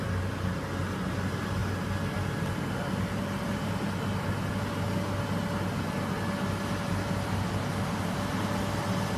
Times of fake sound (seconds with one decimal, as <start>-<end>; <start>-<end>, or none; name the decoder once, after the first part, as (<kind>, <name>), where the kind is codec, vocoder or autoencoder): none